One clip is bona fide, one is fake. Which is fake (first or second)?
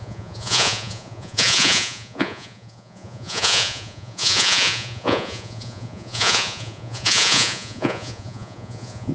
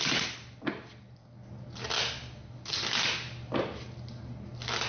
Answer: first